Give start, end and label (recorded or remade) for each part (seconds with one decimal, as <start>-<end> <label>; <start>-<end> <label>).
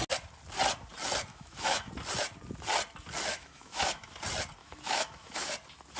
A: 0.0-1.3 recorded; 1.3-1.9 remade; 1.9-3.3 recorded; 3.3-4.1 remade; 4.1-4.6 recorded; 4.6-5.5 remade; 5.5-6.0 recorded